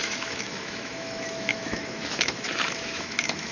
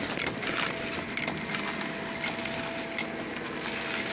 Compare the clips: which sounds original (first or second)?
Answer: second